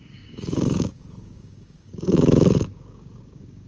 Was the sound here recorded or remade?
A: remade